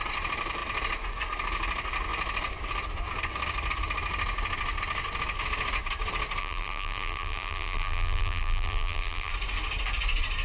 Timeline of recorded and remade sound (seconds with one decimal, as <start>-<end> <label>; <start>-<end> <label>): 0.0-6.4 recorded; 6.4-9.3 remade; 9.3-10.4 recorded